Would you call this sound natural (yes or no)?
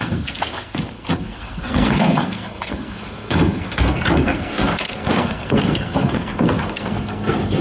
no